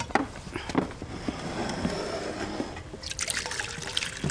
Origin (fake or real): real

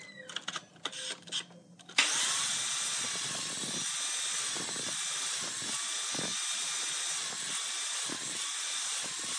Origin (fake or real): real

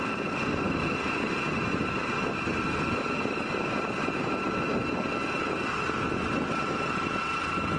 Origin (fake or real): real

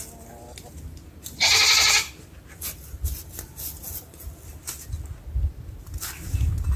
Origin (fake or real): real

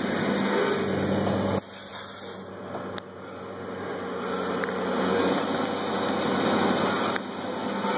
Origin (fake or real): real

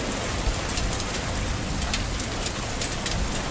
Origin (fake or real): real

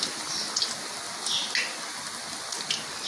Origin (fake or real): real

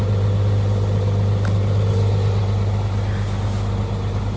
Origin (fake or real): real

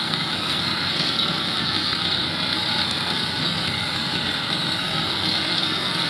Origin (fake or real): fake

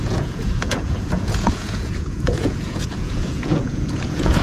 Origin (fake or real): fake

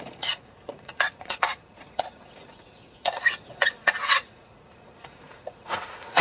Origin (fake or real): fake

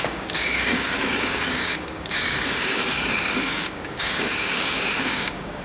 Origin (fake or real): fake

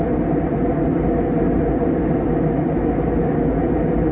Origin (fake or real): real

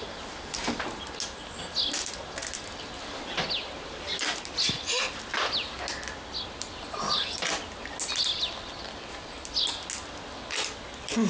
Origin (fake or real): real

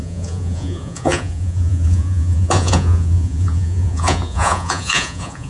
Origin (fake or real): fake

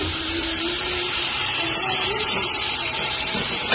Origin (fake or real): fake